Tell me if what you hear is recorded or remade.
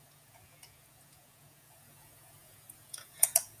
remade